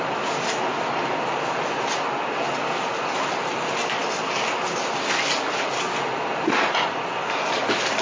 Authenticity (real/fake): real